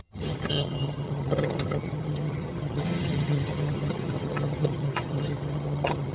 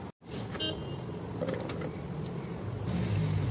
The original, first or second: second